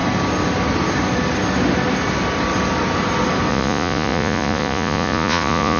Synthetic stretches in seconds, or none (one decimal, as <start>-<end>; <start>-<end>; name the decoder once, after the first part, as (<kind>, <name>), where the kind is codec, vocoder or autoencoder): 3.5-5.8 (vocoder, Vocos)